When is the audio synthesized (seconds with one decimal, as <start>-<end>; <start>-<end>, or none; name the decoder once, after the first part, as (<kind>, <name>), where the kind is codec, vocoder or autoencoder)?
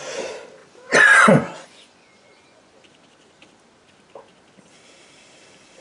0.6-2.7 (vocoder, Vocos)